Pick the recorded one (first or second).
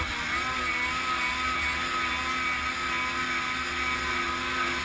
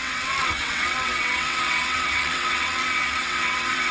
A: first